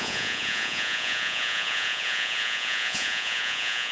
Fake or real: fake